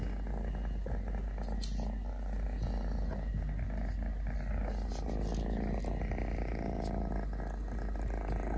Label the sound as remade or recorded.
recorded